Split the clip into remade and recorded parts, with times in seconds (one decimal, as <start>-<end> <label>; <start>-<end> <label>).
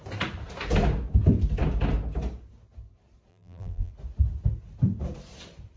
0.0-3.3 recorded; 3.3-3.9 remade; 3.9-5.8 recorded